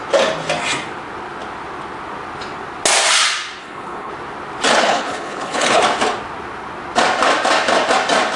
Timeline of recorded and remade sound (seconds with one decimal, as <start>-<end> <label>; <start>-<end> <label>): 0.0-3.6 recorded; 3.6-4.1 remade; 4.1-4.8 recorded; 4.8-5.8 remade; 5.8-8.4 recorded